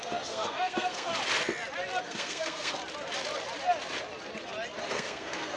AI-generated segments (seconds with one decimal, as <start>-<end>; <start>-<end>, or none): 0.0-1.1; 2.0-2.8; 4.9-5.6